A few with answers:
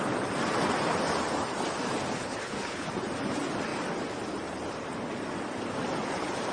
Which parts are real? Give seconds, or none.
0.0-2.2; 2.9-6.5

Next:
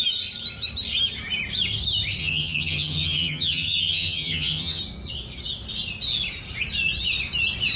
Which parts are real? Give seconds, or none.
0.0-2.2; 4.8-7.8

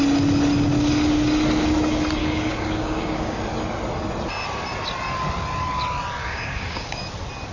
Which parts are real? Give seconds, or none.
0.0-2.2; 3.4-6.2; 7.0-7.5

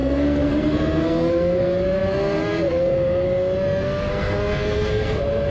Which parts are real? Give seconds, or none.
none

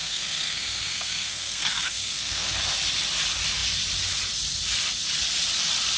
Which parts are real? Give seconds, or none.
2.6-6.0